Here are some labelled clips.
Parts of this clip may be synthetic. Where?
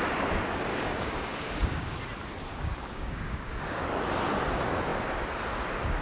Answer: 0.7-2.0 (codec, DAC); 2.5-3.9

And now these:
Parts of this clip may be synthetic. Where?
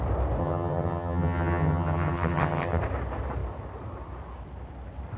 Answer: 0.4-2.8 (vocoder, HiFi-GAN)